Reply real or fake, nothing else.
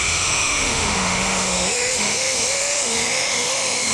fake